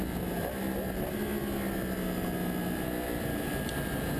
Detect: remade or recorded recorded